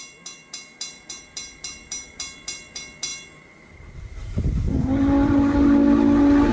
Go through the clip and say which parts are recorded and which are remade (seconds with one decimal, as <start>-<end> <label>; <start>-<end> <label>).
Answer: 0.0-6.5 recorded